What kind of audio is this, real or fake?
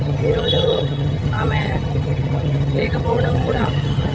fake